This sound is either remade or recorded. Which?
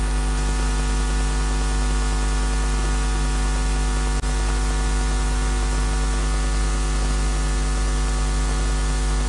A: recorded